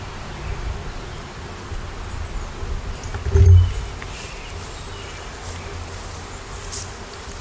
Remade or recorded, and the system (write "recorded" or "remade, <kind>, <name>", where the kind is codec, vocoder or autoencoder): recorded